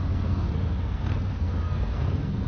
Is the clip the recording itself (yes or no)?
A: no